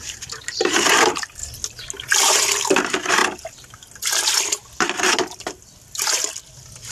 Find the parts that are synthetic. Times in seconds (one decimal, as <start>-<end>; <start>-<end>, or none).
0.0-1.4; 2.7-3.2